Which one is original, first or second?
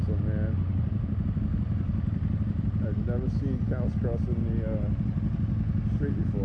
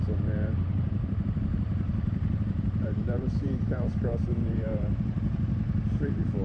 first